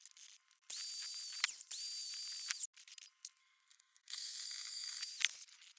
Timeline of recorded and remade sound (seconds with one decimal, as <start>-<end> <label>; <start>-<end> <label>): 0.0-3.4 recorded; 3.4-5.0 remade; 5.0-5.8 recorded